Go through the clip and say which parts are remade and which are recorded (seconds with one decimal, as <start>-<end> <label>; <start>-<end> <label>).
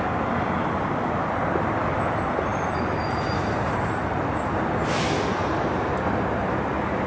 0.0-2.5 recorded; 2.5-4.6 remade; 4.6-5.4 recorded; 5.4-6.1 remade; 6.1-7.1 recorded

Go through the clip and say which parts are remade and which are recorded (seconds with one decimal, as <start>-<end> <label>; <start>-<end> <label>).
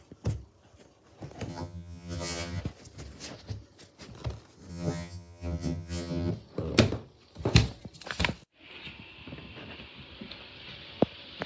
0.0-1.5 recorded; 1.5-2.6 remade; 2.6-4.7 recorded; 4.7-6.3 remade; 6.3-11.5 recorded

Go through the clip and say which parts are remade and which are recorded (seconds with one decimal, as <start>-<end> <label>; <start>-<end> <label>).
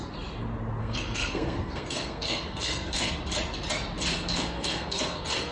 0.0-0.8 recorded; 0.8-3.1 remade; 3.1-4.1 recorded; 4.1-5.5 remade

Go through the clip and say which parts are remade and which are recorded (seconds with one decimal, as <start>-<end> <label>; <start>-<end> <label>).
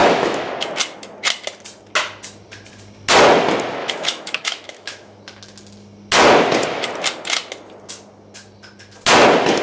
0.0-0.5 remade; 0.5-3.8 recorded; 3.8-5.2 remade; 5.2-9.6 recorded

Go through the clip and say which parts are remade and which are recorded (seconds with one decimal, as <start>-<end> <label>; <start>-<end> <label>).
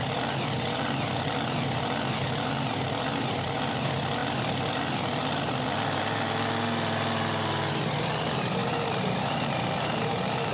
0.0-8.6 recorded; 8.6-10.5 remade